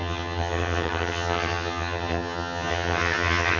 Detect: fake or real fake